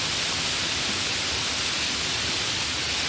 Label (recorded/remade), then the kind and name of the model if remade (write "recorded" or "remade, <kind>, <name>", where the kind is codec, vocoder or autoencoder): recorded